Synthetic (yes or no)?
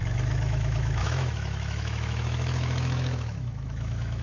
yes